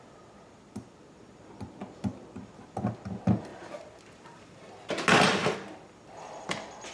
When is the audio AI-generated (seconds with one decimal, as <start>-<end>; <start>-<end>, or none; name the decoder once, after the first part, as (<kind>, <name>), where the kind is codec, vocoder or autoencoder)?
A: none